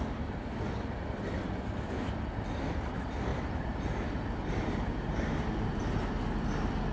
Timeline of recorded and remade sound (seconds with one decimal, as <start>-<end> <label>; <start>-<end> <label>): 0.0-3.3 recorded; 3.3-5.8 remade; 5.8-6.9 recorded